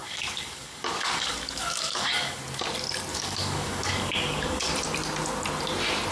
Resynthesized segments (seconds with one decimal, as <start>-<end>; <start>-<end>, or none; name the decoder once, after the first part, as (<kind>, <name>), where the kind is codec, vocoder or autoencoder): 0.0-2.4 (codec, DAC); 3.1-4.7

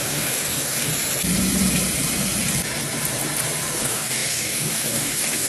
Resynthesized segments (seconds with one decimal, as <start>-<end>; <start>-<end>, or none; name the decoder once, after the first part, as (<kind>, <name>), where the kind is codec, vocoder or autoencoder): 0.0-0.9 (codec, DAC); 3.8-5.5

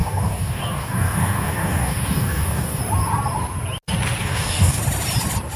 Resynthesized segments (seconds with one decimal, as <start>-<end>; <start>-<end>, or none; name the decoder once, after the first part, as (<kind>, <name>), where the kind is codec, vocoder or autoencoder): 0.0-2.8 (codec, DAC); 4.2-4.8

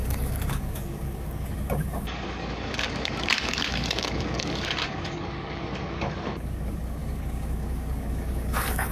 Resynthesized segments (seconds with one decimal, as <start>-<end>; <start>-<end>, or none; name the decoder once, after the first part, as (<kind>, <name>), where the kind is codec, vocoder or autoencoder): 0.0-8.9 (codec, DAC)

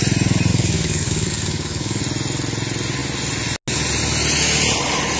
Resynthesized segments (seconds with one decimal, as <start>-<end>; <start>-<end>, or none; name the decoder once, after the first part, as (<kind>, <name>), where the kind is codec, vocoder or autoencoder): 0.5-2.0 (codec, DAC)

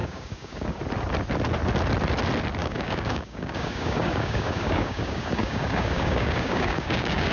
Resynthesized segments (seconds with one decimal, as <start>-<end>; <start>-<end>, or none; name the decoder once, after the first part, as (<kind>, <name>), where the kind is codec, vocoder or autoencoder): 0.0-0.8 (codec, DAC); 2.6-7.3

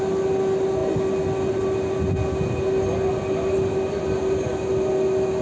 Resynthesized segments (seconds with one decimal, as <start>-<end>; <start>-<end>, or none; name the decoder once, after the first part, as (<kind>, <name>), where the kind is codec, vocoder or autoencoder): none